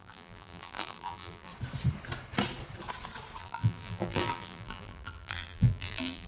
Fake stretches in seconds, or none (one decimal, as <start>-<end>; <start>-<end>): 0.0-1.5; 3.4-6.3